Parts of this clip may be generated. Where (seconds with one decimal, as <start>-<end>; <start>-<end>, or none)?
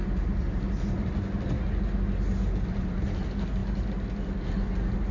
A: none